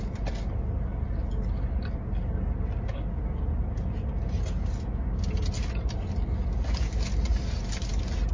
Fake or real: real